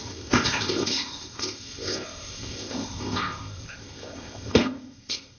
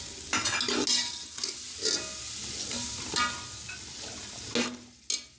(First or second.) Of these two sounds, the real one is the second